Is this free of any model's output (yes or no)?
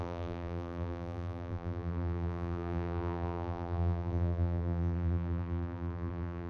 no